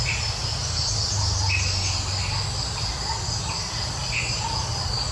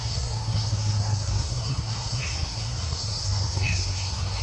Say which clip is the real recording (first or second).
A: first